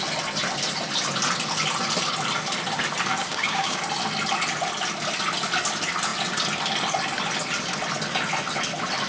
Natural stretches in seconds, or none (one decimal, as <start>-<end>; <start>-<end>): 0.0-3.2; 3.8-9.1